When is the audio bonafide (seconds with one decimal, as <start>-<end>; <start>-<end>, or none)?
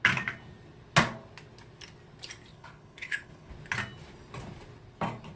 0.0-2.5; 3.5-5.4